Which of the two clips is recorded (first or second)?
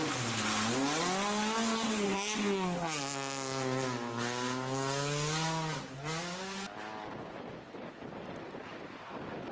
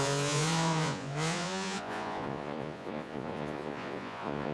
first